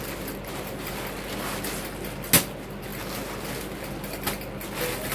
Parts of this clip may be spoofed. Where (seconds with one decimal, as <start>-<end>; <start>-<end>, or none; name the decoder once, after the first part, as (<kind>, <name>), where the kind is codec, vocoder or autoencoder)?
none